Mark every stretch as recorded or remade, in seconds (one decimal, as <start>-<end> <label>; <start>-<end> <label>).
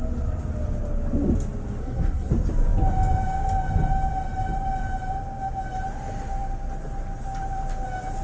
0.0-1.8 recorded; 1.8-2.3 remade; 2.3-8.2 recorded